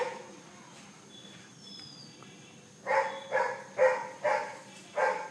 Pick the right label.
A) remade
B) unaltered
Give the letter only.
B